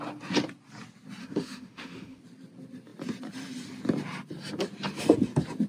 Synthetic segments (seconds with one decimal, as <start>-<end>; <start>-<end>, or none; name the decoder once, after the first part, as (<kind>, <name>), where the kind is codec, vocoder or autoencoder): 1.2-2.2 (autoencoder, DAC-VAE)